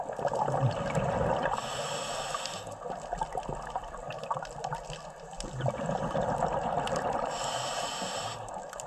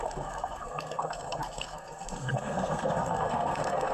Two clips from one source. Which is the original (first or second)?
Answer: first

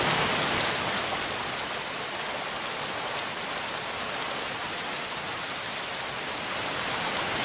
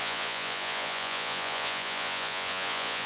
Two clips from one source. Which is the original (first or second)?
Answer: first